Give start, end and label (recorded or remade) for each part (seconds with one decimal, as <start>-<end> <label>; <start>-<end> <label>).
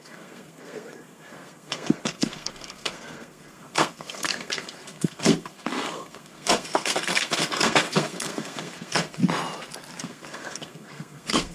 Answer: 0.0-9.2 remade; 9.2-10.0 recorded; 10.0-11.5 remade